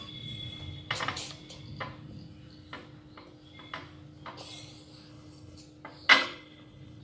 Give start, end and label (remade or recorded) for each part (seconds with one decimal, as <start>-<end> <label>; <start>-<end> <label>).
0.0-5.1 recorded; 5.1-5.6 remade; 5.6-6.1 recorded; 6.1-7.0 remade